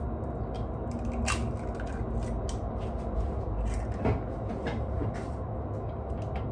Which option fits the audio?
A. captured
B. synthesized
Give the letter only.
A